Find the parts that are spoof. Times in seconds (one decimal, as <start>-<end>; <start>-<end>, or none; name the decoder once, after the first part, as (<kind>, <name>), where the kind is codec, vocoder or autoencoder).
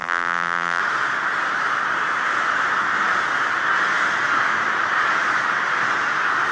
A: 0.0-0.8 (vocoder, BigVGAN v2)